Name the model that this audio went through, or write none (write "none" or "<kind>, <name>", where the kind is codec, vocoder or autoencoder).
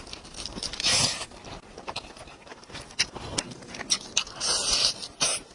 vocoder, BigVGAN v2